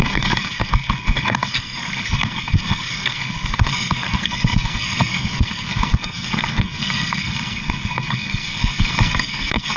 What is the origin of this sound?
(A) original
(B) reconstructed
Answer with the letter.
B